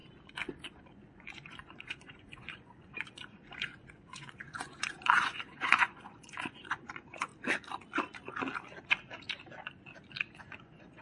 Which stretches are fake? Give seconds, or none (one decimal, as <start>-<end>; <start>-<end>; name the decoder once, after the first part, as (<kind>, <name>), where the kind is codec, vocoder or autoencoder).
0.9-7.3 (vocoder, Vocos); 10.4-11.0